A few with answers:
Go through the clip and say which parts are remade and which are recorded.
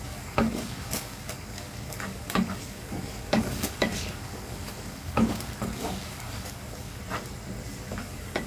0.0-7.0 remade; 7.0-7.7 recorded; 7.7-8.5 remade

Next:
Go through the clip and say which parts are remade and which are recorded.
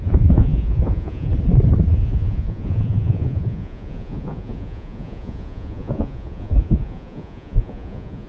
0.0-1.3 remade; 1.3-1.9 recorded; 1.9-8.3 remade